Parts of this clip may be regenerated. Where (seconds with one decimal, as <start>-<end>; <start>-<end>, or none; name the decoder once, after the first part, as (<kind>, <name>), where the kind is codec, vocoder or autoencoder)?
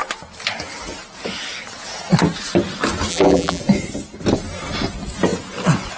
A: 3.1-3.6 (vocoder, BigVGAN v2)